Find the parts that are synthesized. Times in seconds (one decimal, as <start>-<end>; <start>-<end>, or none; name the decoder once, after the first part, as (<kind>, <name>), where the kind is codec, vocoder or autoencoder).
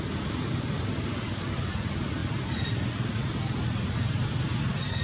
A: none